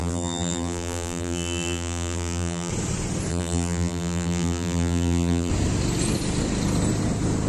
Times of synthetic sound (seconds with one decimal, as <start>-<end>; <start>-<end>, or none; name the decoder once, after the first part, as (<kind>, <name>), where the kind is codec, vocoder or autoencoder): 0.0-2.7 (vocoder, BigVGAN v2); 3.3-5.5